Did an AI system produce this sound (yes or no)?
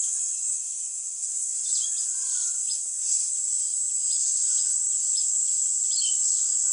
no